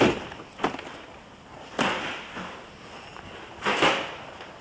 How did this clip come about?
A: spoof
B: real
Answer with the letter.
B